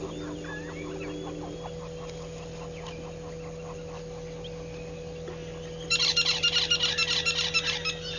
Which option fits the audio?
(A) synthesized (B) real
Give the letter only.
B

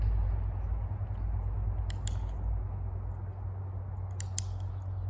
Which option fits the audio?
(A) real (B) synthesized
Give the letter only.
A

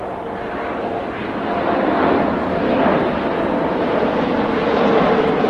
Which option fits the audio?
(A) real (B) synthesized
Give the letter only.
A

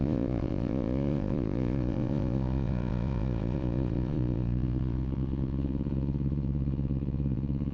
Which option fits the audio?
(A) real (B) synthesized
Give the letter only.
B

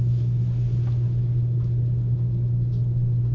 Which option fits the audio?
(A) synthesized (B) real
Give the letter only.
B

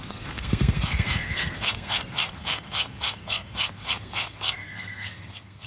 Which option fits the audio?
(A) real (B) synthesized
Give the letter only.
B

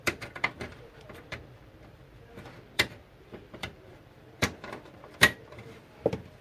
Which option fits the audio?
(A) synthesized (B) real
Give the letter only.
A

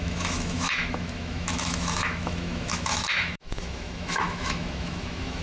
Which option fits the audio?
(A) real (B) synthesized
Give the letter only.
B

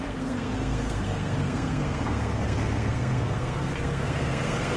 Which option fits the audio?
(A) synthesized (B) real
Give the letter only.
A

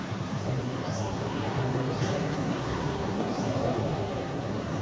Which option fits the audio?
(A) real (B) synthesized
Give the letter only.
B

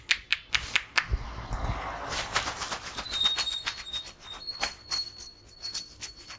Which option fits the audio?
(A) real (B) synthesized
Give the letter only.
A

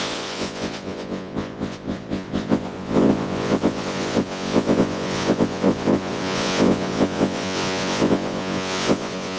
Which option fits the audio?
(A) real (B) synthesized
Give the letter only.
B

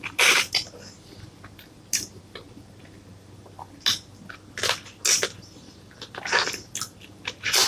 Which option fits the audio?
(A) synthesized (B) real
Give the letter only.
B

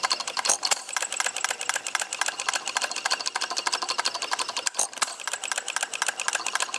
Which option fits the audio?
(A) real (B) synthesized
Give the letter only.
A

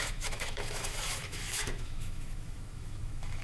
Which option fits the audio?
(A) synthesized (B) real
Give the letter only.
A